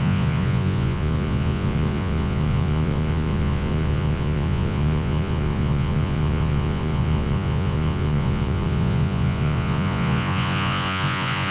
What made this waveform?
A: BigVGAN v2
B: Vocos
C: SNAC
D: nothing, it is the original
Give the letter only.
B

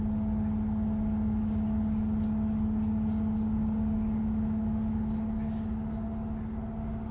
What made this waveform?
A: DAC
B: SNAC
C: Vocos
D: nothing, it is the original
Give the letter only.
D